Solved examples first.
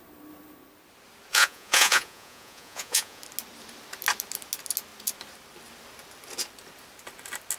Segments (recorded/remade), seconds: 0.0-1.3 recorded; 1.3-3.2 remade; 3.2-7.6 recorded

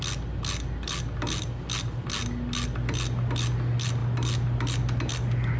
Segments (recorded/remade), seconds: 0.0-5.6 recorded

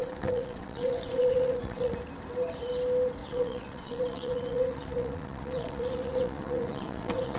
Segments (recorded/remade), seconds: 0.0-1.9 remade; 1.9-3.2 recorded; 3.2-7.4 remade

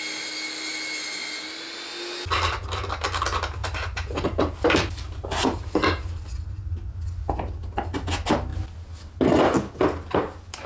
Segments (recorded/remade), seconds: 0.0-3.6 recorded; 3.6-6.2 remade; 6.2-10.7 recorded

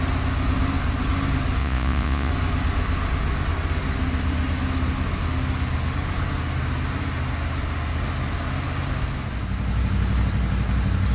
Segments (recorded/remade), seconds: 0.0-1.6 recorded; 1.6-2.3 remade; 2.3-11.1 recorded

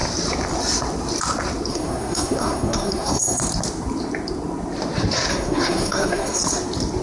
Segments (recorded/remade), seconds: 0.0-1.7 recorded; 1.7-3.4 remade; 3.4-5.3 recorded; 5.3-6.4 remade; 6.4-7.0 recorded

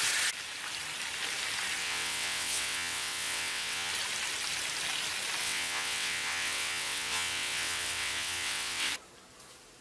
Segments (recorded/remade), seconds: 0.0-1.8 recorded; 1.8-3.9 remade; 3.9-5.4 recorded; 5.4-8.9 remade; 8.9-9.8 recorded